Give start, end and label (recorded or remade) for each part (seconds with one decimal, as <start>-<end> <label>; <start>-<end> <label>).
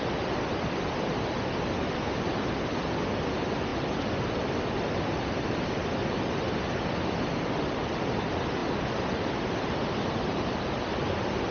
0.0-11.5 recorded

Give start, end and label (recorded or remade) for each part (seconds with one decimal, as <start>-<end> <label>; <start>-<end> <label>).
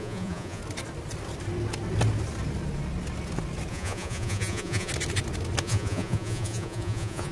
0.0-0.6 remade; 0.6-3.7 recorded; 3.7-4.9 remade; 4.9-5.6 recorded; 5.6-7.3 remade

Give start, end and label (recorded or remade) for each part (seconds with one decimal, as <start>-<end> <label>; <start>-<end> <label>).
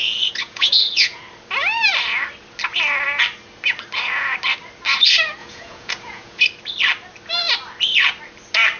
0.0-1.2 remade; 1.2-5.4 recorded; 5.4-6.4 remade; 6.4-8.8 recorded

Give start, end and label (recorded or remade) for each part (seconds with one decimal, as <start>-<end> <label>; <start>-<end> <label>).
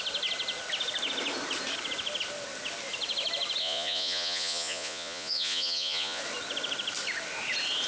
0.0-3.6 recorded; 3.6-6.2 remade; 6.2-7.9 recorded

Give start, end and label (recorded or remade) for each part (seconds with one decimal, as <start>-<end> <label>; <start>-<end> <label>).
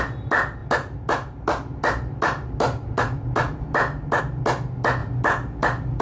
0.0-6.0 recorded